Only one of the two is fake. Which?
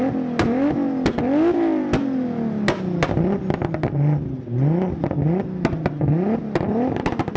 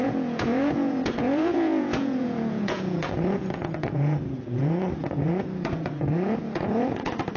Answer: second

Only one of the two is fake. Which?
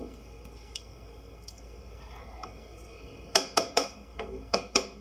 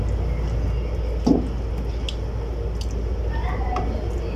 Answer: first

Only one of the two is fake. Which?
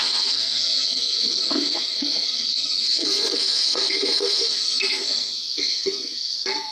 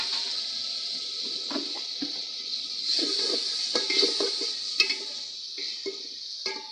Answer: first